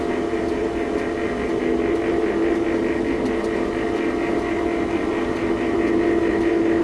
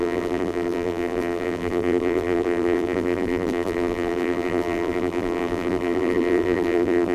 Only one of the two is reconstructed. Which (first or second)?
second